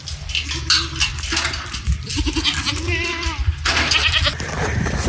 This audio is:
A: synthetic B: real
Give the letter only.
B